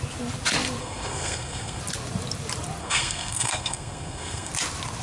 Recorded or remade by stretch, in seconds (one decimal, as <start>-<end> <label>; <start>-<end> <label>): 0.0-0.8 recorded; 0.8-1.8 remade; 1.8-2.8 recorded; 2.8-4.5 remade; 4.5-5.0 recorded

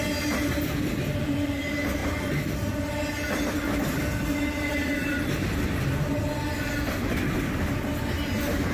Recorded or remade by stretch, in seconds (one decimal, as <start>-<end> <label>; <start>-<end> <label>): 0.0-8.7 recorded

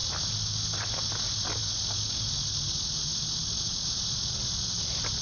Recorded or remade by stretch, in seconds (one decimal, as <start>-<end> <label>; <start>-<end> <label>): 0.0-5.2 recorded

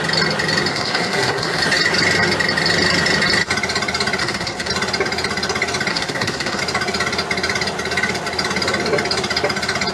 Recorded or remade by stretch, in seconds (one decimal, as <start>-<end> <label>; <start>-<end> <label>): 0.0-0.7 recorded; 0.7-1.6 remade; 1.6-4.2 recorded; 4.2-4.7 remade; 4.7-5.9 recorded; 5.9-6.6 remade; 6.6-9.9 recorded

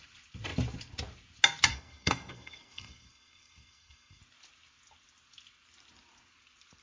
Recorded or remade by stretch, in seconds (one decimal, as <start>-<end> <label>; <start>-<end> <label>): 0.0-1.7 recorded; 1.7-4.2 remade; 4.2-6.8 recorded

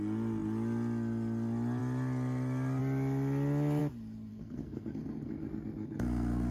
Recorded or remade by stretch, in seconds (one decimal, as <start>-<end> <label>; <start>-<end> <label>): 0.0-4.3 recorded; 4.3-6.5 remade

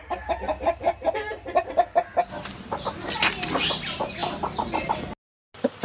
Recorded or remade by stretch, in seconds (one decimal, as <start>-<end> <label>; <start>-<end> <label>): 0.0-5.8 recorded